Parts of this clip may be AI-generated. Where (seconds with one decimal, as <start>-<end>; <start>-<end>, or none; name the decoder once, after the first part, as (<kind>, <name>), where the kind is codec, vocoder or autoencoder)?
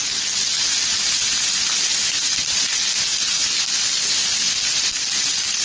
none